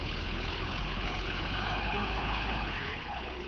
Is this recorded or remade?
remade